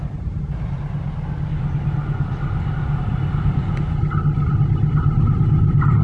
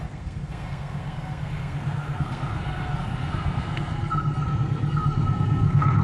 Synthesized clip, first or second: second